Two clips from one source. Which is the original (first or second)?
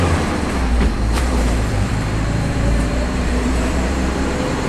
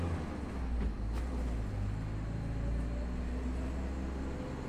second